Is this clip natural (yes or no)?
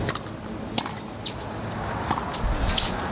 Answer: yes